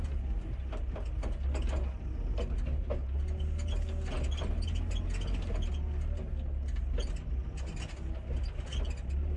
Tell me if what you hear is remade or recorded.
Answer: recorded